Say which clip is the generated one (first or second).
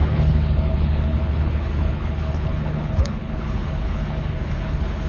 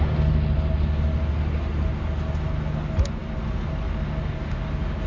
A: first